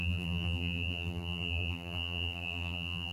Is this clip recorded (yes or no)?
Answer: no